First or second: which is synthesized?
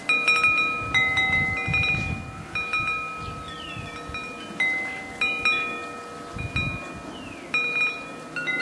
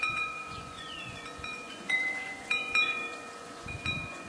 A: second